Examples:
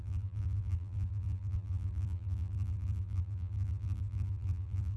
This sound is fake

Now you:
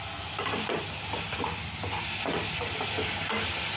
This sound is real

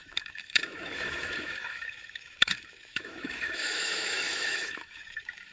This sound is fake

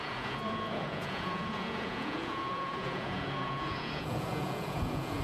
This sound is fake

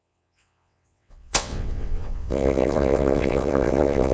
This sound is fake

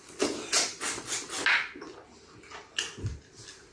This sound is real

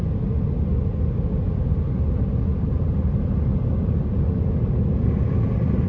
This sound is real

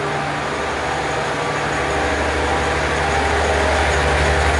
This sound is real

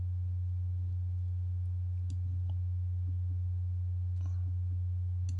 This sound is real